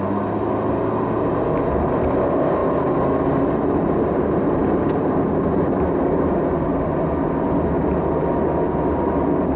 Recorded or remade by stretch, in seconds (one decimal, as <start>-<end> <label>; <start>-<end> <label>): 0.0-9.6 recorded